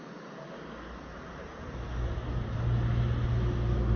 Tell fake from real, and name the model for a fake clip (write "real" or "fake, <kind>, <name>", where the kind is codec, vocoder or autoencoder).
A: real